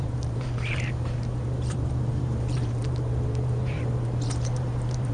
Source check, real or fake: fake